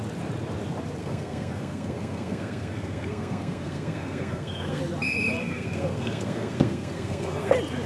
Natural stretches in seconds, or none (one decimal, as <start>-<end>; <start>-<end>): 0.0-1.0; 4.8-5.4; 7.5-7.9